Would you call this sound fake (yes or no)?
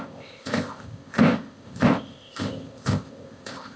yes